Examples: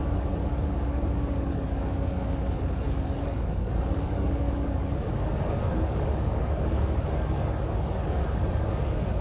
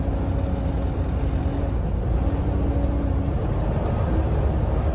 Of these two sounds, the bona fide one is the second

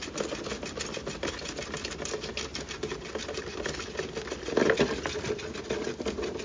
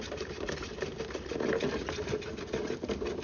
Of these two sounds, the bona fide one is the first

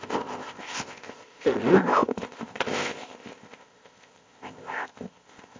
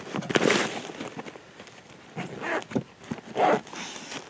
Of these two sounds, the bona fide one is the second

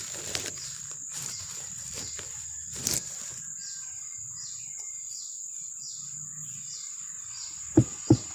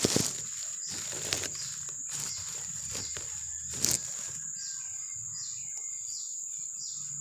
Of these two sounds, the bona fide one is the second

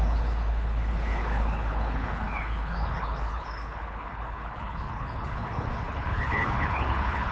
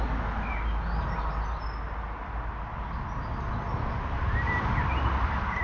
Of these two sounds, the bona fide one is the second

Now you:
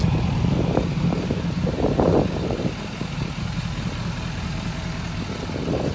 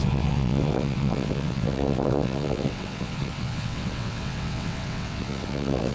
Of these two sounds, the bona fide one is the first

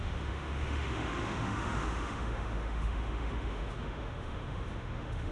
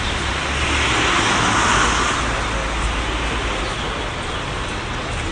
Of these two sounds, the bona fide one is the second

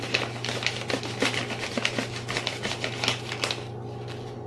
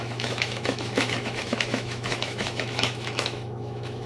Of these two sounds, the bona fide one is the first